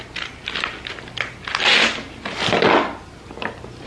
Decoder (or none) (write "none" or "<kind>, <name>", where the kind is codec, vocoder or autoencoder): none